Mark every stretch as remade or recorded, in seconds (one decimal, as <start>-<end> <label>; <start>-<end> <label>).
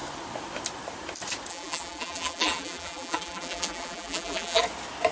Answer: 0.0-1.5 recorded; 1.5-4.6 remade; 4.6-5.1 recorded